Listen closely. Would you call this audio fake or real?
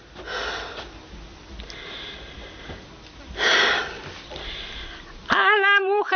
real